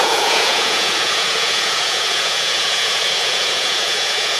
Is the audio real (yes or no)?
no